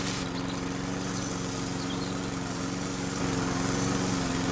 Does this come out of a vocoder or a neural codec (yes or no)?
no